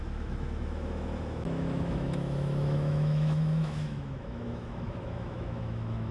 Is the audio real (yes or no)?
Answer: no